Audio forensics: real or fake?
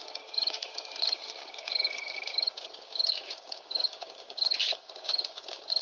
fake